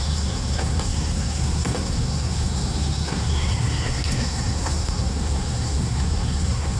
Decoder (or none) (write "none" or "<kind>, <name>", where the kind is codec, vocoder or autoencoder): codec, SNAC